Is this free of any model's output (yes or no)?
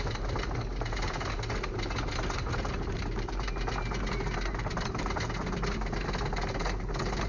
yes